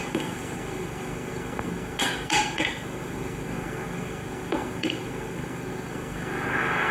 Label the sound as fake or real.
fake